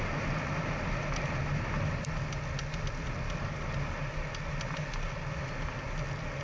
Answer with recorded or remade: recorded